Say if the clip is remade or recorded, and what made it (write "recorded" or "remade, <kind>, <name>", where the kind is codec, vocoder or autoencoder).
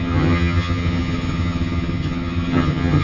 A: remade, vocoder, HiFi-GAN